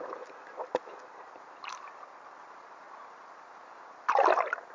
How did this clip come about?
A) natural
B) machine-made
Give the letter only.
A